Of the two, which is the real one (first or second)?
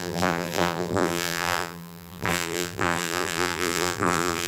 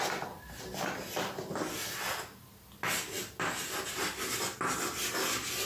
second